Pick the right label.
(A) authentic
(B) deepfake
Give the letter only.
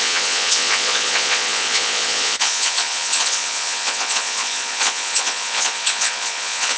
B